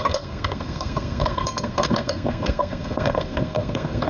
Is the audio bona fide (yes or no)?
no